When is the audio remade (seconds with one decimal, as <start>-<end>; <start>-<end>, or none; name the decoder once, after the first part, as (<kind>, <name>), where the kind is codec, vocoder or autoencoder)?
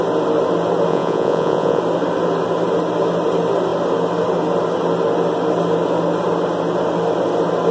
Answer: 0.9-1.8 (vocoder, Vocos)